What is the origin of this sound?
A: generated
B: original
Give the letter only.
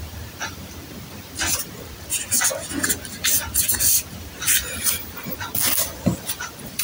B